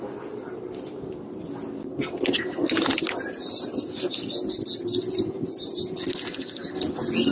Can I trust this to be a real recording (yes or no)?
yes